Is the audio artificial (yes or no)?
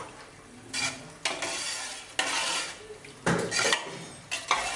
no